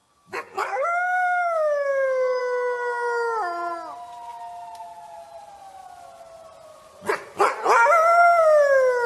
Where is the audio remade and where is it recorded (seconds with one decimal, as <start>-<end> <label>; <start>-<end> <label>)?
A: 0.0-2.4 remade; 2.4-9.1 recorded